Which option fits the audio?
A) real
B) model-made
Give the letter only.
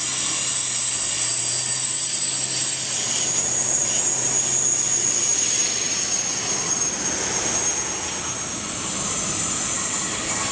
A